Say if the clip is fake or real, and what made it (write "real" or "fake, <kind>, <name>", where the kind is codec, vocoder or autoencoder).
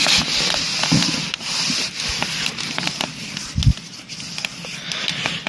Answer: real